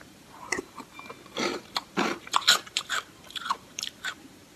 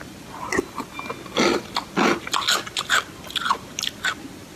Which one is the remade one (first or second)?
first